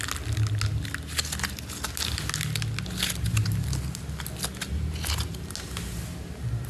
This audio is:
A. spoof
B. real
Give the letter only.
B